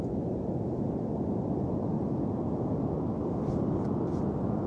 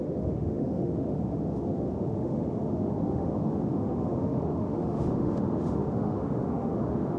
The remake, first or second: second